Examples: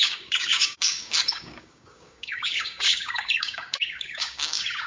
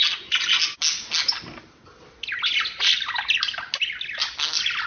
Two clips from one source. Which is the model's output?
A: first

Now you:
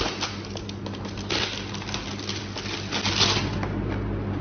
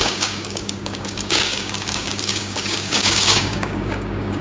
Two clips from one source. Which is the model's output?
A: second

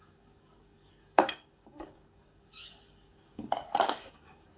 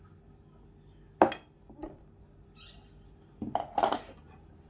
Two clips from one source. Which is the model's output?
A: first